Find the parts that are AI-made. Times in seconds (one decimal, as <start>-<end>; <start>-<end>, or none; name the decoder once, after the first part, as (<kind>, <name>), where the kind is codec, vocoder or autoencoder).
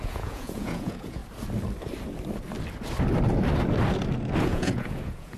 0.0-1.2 (vocoder, Vocos); 4.4-5.4